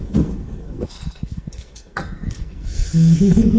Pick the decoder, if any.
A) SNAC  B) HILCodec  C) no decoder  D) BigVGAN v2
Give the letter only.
A